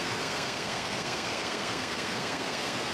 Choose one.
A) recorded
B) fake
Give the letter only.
B